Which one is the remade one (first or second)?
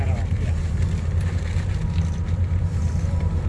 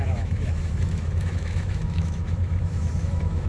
second